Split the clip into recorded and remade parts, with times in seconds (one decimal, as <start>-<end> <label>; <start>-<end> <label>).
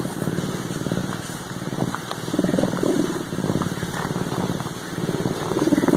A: 0.0-6.0 remade